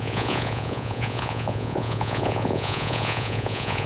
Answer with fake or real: fake